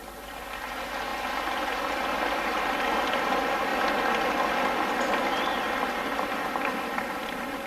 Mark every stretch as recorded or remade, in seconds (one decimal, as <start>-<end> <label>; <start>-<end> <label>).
0.0-7.7 recorded